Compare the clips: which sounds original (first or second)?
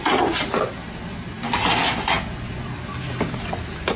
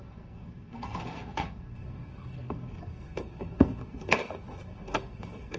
first